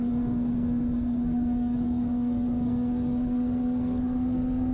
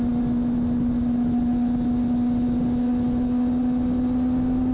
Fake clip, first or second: first